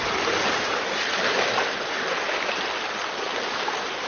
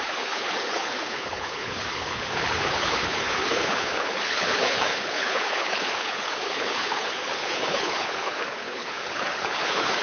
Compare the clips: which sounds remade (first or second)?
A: second